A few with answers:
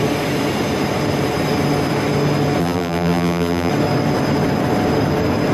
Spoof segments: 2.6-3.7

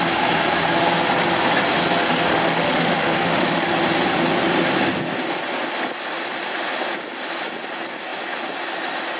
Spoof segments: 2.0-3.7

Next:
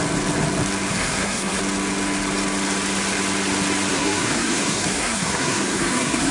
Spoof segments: 0.9-1.6; 3.9-6.3

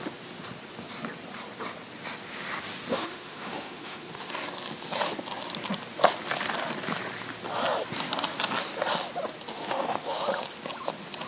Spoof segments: 2.9-4.3; 9.5-10.2

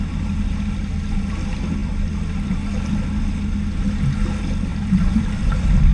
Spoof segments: none

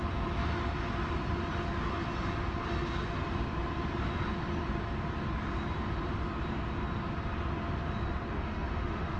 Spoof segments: 8.3-9.2